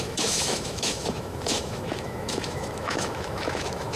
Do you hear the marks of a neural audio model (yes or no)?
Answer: yes